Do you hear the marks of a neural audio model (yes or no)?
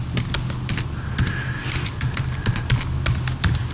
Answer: no